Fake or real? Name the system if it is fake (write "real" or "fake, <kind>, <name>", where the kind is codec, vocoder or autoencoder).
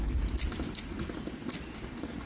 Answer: real